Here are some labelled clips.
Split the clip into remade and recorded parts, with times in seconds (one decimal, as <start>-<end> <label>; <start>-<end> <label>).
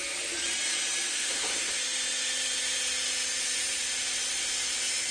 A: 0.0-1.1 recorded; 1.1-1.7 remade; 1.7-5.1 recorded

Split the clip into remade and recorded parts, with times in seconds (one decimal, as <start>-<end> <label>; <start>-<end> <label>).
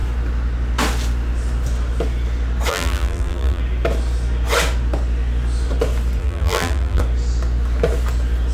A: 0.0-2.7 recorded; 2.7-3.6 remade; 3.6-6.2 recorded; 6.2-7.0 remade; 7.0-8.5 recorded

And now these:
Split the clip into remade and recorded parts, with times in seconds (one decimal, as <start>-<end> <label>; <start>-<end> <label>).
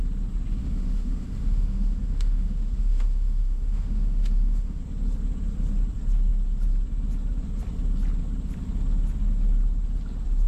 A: 0.0-0.6 recorded; 0.6-4.8 remade; 4.8-10.5 recorded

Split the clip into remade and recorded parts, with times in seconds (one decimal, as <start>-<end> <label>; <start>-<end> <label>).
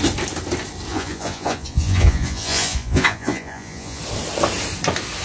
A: 0.0-0.9 recorded; 0.9-4.0 remade; 4.0-5.2 recorded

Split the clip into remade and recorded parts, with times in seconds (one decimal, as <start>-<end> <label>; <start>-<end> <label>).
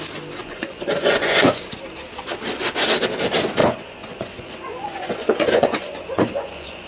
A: 0.0-0.4 recorded; 0.4-1.7 remade; 1.7-3.6 recorded; 3.6-6.9 remade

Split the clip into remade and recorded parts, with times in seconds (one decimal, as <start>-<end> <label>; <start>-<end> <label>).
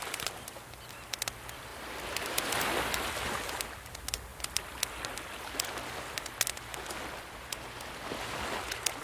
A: 0.0-1.7 recorded; 1.7-3.5 remade; 3.5-9.0 recorded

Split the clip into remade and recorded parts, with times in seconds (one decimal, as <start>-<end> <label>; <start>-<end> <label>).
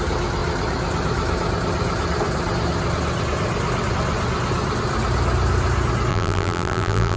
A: 0.0-6.1 recorded; 6.1-7.2 remade